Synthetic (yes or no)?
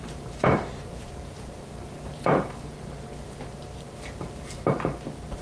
yes